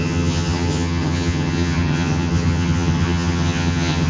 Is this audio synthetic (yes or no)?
yes